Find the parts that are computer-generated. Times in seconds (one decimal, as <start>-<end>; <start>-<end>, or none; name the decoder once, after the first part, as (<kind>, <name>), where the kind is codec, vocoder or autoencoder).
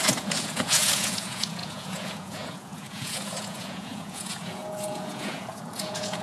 0.0-6.2 (vocoder, Vocos)